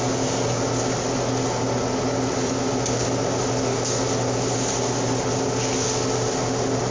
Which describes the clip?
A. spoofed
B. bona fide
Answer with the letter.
B